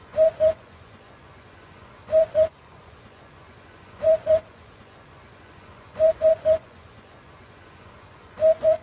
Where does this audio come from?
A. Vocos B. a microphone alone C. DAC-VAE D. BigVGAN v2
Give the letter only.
A